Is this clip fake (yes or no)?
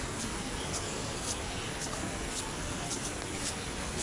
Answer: yes